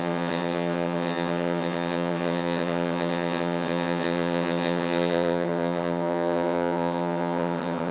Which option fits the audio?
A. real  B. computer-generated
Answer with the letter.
B